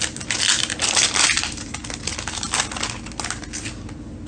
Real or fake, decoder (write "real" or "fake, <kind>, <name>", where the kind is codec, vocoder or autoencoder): real